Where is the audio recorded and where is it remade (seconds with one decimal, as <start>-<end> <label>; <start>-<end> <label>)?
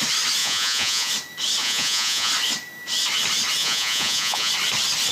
0.0-0.4 recorded; 0.4-1.1 remade; 1.1-1.6 recorded; 1.6-2.3 remade; 2.3-3.6 recorded; 3.6-4.5 remade; 4.5-5.1 recorded